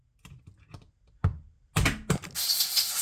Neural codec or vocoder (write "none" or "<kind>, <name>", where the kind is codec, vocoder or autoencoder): none